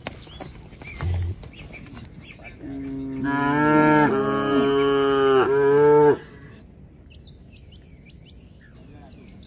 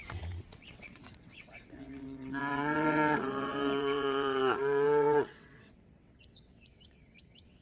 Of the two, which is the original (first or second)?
first